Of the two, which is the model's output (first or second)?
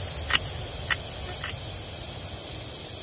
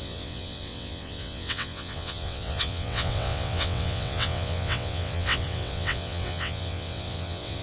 second